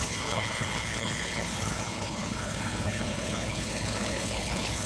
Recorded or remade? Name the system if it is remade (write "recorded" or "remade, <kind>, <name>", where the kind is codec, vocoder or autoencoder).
remade, codec, HILCodec